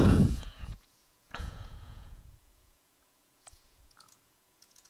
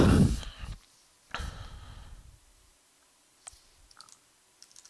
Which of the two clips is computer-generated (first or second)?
first